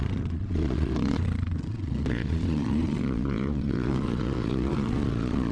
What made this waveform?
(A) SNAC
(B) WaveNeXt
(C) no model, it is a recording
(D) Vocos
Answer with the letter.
D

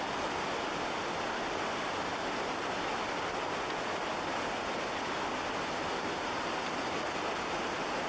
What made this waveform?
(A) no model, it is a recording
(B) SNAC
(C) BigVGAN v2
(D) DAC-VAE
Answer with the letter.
A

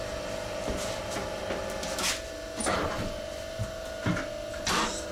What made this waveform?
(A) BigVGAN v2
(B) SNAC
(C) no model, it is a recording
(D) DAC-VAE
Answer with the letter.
C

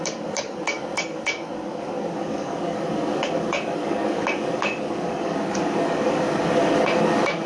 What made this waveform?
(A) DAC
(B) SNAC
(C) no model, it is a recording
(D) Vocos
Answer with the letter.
A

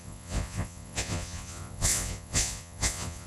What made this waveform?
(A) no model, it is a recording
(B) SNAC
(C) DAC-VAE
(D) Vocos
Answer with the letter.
D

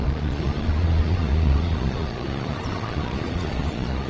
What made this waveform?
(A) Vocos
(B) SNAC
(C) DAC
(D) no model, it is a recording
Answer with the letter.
A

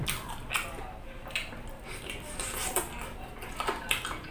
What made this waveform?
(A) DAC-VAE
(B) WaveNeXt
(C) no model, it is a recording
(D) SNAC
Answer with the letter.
C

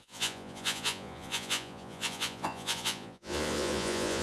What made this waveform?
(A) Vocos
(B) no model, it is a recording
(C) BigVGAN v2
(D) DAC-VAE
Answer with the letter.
A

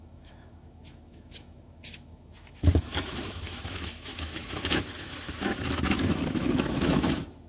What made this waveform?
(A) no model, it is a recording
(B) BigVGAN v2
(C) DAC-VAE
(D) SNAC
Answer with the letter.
C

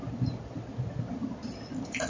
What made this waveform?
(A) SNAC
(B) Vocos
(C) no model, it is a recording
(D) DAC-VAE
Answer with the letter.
C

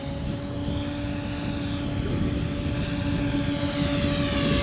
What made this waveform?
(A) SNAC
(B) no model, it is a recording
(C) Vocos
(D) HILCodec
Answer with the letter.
B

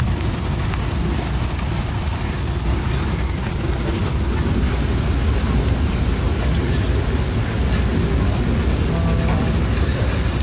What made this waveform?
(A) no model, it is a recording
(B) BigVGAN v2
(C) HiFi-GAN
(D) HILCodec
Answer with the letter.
A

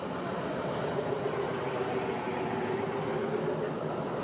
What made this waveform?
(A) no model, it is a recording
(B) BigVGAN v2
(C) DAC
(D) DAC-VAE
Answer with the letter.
A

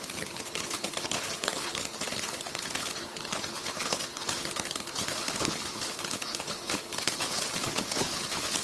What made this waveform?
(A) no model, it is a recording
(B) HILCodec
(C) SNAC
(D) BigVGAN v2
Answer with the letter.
B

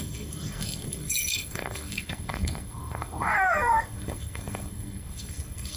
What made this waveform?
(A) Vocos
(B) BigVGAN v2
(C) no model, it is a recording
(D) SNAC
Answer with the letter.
D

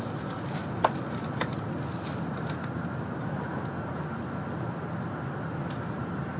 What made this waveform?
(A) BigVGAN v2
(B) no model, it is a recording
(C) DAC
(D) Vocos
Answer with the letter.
B